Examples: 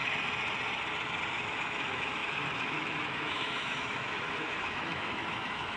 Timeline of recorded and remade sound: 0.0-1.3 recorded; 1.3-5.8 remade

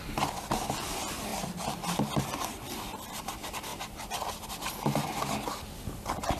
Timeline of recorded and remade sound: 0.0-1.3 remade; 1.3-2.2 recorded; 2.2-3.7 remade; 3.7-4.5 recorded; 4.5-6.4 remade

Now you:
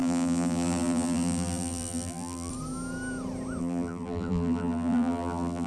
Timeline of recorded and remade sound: 0.0-2.5 remade; 2.5-3.6 recorded; 3.6-5.7 remade

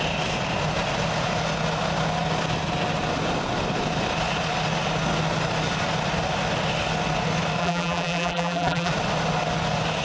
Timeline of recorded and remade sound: 0.0-7.6 recorded; 7.6-8.9 remade; 8.9-10.0 recorded